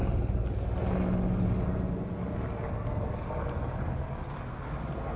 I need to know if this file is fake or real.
real